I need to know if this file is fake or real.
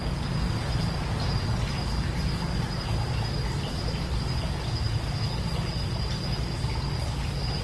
real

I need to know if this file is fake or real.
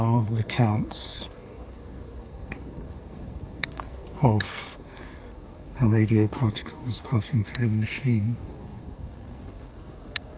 fake